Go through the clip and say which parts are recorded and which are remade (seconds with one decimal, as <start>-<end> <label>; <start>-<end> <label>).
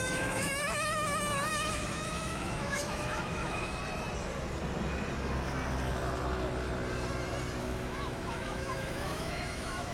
0.0-3.8 remade; 3.8-7.6 recorded; 7.6-9.9 remade